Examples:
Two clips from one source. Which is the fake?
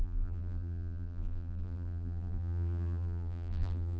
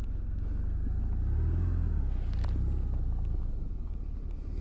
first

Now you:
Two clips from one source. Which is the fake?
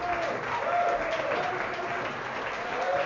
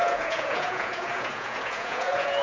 second